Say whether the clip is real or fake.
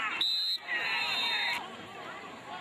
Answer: real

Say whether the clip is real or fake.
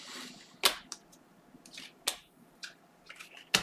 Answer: real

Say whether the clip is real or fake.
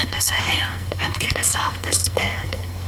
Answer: fake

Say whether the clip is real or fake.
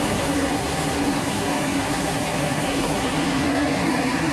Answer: fake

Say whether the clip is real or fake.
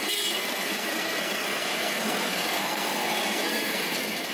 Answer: fake